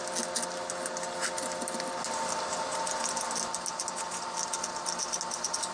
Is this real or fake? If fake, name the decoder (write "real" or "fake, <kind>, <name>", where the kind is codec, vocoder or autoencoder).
real